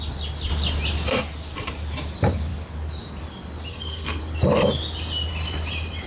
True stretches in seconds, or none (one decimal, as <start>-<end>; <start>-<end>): 0.0-3.7; 4.2-6.1